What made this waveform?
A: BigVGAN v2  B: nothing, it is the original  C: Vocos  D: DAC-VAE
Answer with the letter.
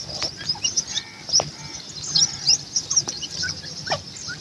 B